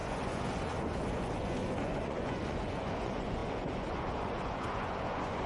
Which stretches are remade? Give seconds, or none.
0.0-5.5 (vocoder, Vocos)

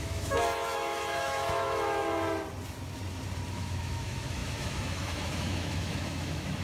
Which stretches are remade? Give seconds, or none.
0.0-2.0 (autoencoder, DAC-VAE); 3.5-6.6

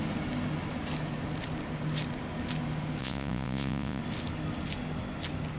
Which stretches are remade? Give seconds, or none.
3.0-4.0 (vocoder, Vocos)